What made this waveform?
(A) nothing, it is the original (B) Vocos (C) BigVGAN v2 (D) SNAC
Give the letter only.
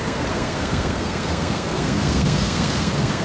D